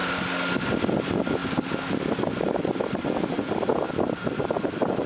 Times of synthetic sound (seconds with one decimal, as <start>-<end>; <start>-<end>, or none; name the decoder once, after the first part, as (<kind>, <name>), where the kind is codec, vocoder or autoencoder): none